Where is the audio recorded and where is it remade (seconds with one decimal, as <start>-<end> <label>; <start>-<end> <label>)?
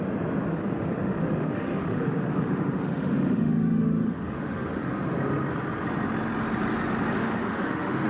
0.0-0.5 recorded; 0.5-5.0 remade; 5.0-7.2 recorded; 7.2-8.1 remade